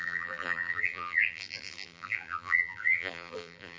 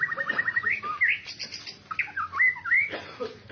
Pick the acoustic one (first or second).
second